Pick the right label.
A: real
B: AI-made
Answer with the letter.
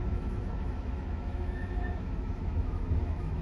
B